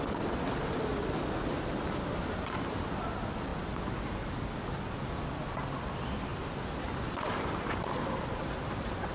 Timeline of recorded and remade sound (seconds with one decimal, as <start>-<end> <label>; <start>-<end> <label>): 0.0-9.1 recorded